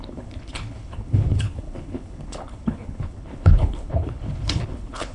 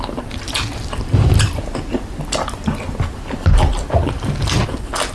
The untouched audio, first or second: second